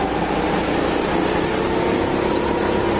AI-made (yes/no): no